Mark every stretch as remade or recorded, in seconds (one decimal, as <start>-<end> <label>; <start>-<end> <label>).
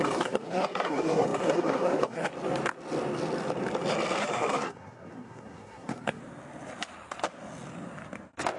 0.0-2.3 remade; 2.3-4.2 recorded; 4.2-6.2 remade; 6.2-8.6 recorded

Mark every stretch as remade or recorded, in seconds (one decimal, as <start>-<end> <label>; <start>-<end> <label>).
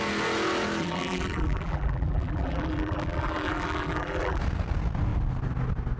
0.0-0.8 recorded; 0.8-4.4 remade; 4.4-6.0 recorded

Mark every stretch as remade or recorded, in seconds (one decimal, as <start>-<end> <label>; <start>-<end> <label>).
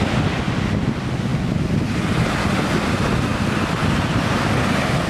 0.0-5.1 recorded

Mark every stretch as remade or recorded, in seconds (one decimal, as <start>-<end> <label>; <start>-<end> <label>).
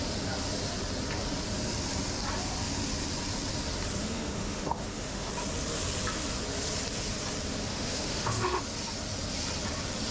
0.0-4.0 recorded; 4.0-5.3 remade; 5.3-7.7 recorded; 7.7-8.6 remade; 8.6-10.1 recorded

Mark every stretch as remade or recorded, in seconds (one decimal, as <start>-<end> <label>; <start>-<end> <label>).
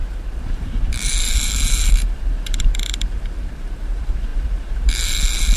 0.0-5.6 remade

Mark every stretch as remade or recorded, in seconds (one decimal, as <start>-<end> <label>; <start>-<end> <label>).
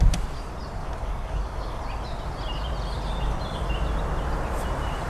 0.0-0.8 recorded; 0.8-1.8 remade; 1.8-5.1 recorded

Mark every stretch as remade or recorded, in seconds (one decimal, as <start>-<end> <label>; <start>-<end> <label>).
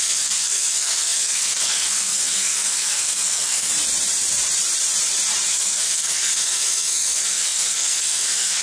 0.0-3.7 remade; 3.7-5.5 recorded; 5.5-8.6 remade